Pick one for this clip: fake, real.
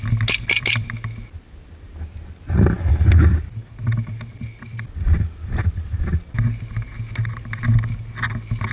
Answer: real